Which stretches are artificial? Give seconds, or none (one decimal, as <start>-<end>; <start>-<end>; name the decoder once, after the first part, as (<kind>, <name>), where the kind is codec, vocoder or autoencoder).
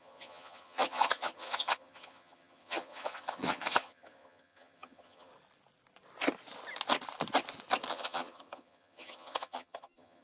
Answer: 0.0-5.3 (vocoder, HiFi-GAN); 7.9-10.2